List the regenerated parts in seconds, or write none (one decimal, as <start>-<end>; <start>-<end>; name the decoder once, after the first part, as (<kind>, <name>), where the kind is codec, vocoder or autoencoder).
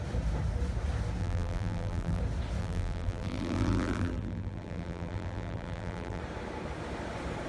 1.2-2.2 (vocoder, BigVGAN v2); 2.6-6.2